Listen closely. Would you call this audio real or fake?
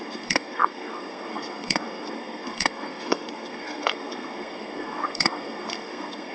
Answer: fake